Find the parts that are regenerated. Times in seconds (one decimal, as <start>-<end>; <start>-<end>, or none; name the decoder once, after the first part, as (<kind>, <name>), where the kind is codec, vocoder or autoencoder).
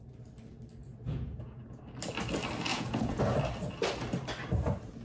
0.8-1.8 (vocoder, Vocos); 2.7-3.2